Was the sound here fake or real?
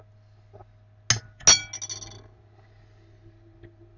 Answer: real